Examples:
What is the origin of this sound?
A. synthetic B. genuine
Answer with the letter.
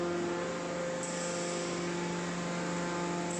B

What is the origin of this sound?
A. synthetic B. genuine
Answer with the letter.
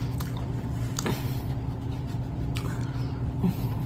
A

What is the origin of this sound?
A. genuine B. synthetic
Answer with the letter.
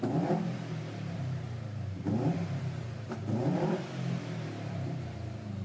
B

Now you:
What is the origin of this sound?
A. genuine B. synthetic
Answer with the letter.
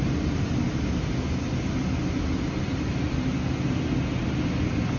A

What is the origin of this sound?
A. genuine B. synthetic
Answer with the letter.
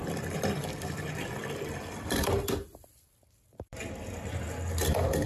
B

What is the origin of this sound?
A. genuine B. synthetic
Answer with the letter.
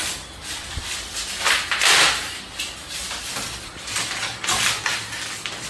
A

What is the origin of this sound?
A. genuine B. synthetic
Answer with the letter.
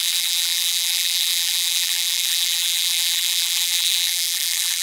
B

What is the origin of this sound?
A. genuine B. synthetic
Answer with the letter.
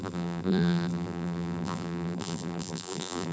B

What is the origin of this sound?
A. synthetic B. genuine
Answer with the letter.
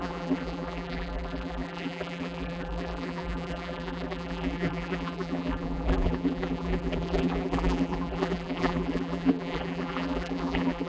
A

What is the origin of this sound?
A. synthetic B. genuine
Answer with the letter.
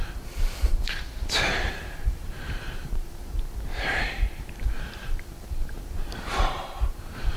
A